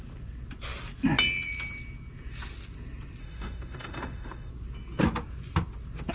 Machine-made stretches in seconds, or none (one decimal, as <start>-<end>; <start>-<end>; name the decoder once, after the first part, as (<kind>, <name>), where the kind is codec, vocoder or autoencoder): 3.2-4.5 (autoencoder, DAC-VAE)